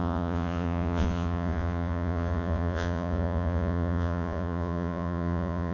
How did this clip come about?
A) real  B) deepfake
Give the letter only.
B